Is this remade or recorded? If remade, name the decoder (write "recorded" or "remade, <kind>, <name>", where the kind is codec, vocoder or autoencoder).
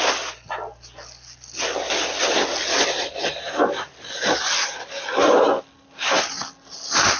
recorded